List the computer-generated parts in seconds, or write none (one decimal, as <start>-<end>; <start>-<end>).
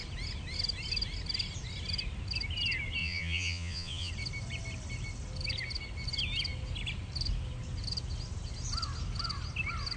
3.0-4.1